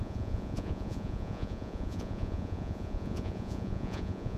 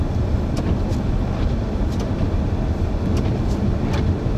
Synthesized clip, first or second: first